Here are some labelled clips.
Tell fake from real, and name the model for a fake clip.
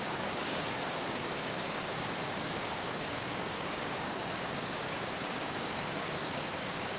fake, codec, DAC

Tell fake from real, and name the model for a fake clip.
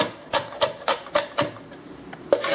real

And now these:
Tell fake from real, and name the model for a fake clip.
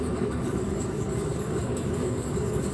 fake, codec, DAC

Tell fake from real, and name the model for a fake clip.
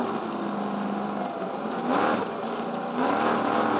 real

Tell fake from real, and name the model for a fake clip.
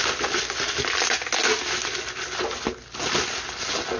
real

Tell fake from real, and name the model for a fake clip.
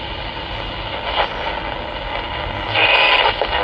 real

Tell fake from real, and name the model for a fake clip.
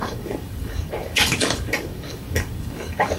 fake, codec, DAC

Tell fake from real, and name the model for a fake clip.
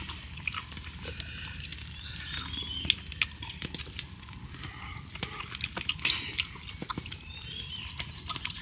real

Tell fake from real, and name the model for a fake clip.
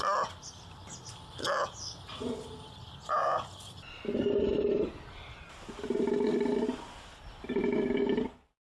real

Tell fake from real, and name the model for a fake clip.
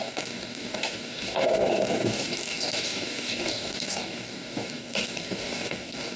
fake, codec, DAC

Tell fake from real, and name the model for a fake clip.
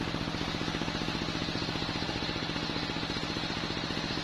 real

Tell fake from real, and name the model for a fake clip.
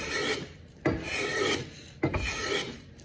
real